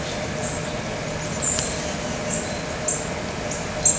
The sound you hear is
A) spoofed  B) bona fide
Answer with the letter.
B